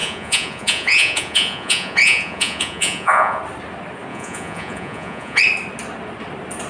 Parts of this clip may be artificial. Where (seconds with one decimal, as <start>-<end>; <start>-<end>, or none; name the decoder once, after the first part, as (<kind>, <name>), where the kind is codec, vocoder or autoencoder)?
0.0-3.4 (vocoder, Vocos); 4.1-5.4